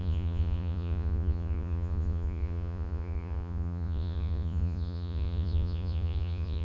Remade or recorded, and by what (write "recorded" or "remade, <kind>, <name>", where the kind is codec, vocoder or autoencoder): remade, vocoder, Vocos